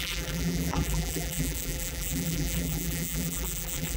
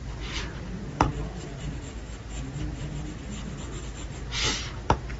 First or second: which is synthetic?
first